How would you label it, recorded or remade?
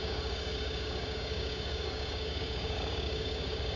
remade